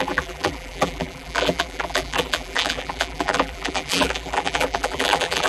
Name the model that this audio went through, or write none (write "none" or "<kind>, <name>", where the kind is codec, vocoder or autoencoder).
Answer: vocoder, BigVGAN v2